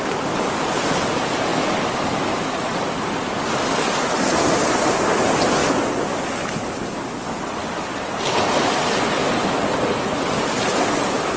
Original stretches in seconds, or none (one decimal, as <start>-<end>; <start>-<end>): 0.0-11.4